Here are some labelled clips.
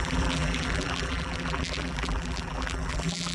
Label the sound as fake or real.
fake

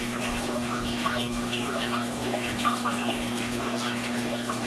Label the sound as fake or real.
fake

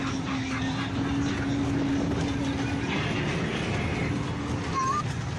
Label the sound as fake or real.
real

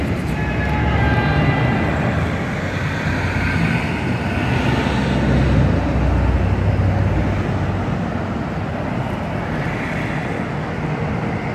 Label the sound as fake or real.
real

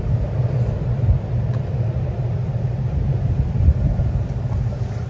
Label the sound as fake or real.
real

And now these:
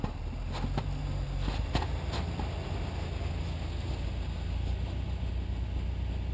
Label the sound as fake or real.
real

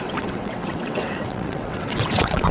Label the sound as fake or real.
fake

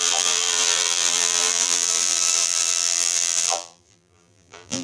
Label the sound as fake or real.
fake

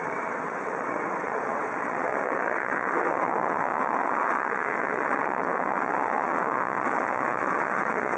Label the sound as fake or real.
fake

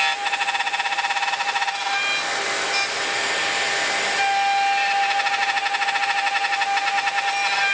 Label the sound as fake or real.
real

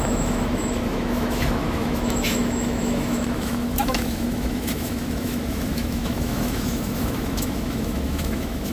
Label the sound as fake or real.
fake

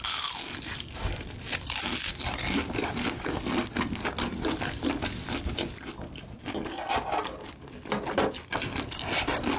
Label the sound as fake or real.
real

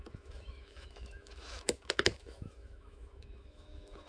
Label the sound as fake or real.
fake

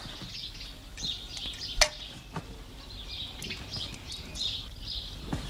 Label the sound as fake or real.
real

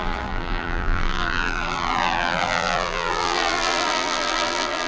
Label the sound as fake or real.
fake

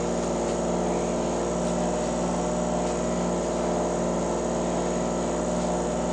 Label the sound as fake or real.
real